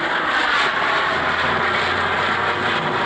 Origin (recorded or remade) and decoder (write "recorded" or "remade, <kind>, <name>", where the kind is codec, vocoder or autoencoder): recorded